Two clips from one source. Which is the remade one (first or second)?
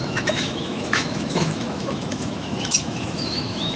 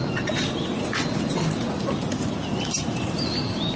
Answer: first